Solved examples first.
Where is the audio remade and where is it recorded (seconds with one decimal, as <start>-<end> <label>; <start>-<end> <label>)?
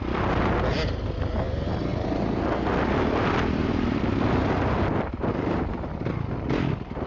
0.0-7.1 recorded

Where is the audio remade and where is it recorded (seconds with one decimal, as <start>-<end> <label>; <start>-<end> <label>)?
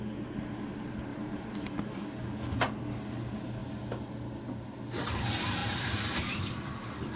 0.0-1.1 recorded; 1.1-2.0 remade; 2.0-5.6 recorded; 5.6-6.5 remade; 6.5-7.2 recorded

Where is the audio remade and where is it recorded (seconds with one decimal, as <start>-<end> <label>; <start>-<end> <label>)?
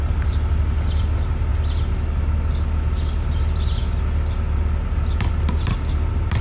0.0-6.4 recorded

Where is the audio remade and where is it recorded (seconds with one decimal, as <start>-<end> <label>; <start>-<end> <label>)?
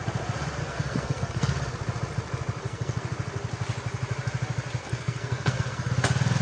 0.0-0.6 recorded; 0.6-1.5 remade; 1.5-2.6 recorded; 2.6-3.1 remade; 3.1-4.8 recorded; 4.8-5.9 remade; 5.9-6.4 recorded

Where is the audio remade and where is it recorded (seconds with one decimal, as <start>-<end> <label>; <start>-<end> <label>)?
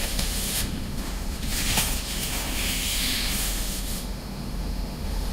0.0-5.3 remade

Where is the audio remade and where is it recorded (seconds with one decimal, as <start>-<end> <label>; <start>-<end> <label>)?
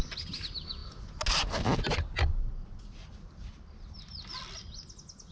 0.0-5.3 recorded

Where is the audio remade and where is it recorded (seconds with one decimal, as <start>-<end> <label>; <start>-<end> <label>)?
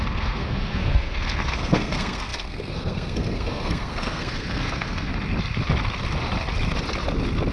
0.0-5.1 remade; 5.1-7.5 recorded